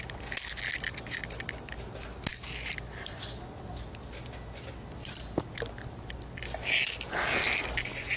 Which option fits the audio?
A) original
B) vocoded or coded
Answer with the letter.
A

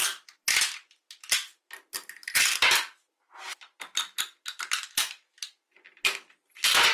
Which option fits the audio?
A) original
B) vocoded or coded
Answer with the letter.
A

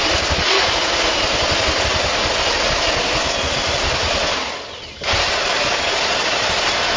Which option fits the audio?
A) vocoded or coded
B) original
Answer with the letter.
B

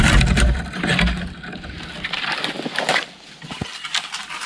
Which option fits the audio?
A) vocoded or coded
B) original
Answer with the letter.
B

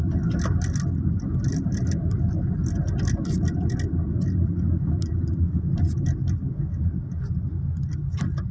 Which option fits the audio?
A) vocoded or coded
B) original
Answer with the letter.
B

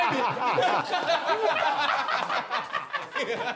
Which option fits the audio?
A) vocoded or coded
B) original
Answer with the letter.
B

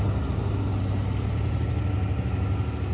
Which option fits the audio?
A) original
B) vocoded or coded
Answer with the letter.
A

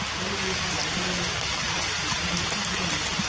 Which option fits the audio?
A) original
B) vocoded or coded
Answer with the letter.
A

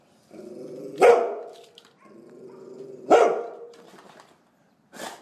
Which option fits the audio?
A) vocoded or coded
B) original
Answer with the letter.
B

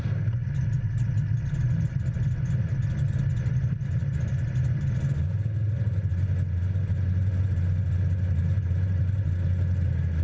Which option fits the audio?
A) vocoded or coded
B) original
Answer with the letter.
B